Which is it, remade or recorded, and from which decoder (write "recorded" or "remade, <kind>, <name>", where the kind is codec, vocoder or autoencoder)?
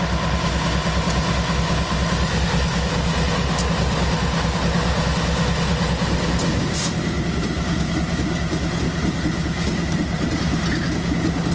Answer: recorded